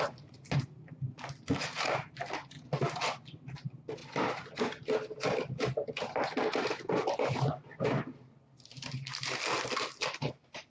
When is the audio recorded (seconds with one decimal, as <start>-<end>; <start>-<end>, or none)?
0.0-10.7